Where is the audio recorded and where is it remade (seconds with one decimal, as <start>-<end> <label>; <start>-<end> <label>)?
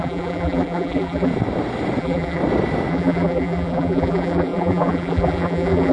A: 0.0-1.3 remade; 1.3-2.0 recorded; 2.0-2.4 remade; 2.4-2.9 recorded; 2.9-5.9 remade